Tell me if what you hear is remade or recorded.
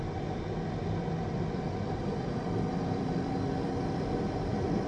remade